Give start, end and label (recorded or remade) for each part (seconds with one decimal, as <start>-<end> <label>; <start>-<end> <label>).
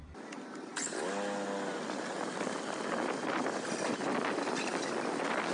0.0-5.5 recorded